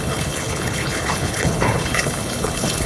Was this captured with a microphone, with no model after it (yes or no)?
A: no